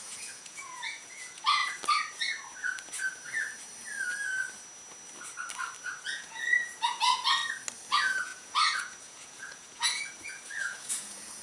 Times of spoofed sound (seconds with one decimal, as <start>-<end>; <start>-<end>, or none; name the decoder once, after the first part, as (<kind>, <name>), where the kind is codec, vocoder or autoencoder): 0.0-1.6 (vocoder, Vocos); 6.0-7.4; 7.9-11.4